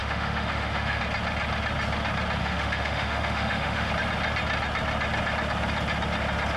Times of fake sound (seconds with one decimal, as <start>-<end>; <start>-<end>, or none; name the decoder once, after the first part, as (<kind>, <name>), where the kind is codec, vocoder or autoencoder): 0.0-1.0 (autoencoder, DAC-VAE); 2.4-3.9